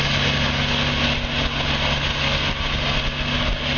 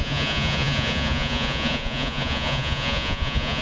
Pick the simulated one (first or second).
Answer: second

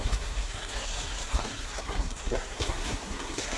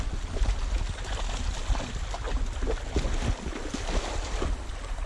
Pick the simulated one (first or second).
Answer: first